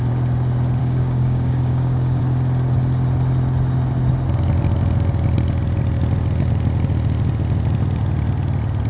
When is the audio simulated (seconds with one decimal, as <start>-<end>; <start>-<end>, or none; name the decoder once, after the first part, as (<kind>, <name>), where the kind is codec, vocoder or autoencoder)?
0.8-2.2 (codec, DAC)